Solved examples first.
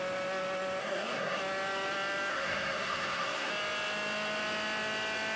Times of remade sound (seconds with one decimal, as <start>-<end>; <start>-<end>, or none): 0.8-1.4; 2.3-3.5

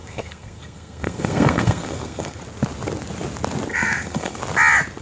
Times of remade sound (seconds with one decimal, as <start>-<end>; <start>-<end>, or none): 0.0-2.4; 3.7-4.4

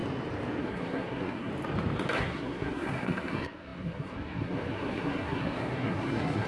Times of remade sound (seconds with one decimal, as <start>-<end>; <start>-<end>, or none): 0.6-1.5; 2.2-6.5

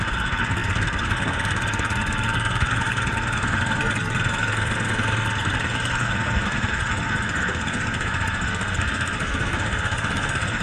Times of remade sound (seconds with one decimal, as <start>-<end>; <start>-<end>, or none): 0.0-10.6